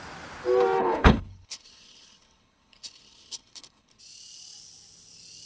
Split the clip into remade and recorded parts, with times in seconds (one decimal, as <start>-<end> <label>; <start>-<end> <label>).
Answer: 0.0-0.8 recorded; 0.8-4.0 remade; 4.0-5.5 recorded